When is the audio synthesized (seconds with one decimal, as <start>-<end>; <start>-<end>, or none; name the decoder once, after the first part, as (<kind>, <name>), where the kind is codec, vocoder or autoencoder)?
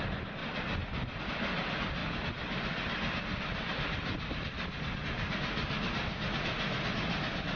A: 0.4-1.2 (vocoder, BigVGAN v2); 2.0-5.0